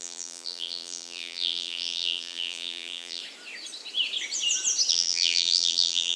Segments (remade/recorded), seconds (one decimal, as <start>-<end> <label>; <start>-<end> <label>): 0.0-3.2 remade; 3.2-4.9 recorded; 4.9-6.2 remade